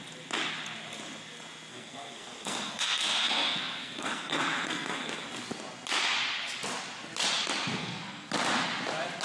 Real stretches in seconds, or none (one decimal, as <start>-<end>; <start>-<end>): 0.0-1.7; 5.2-7.8; 8.3-9.2